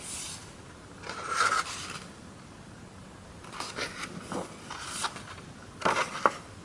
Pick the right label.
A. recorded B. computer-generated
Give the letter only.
A